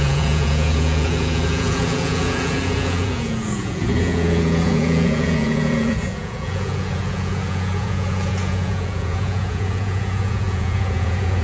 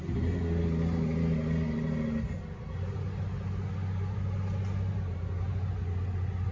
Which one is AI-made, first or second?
first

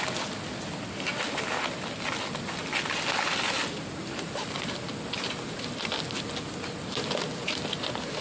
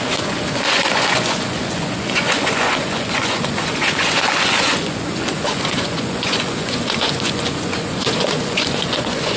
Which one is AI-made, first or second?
second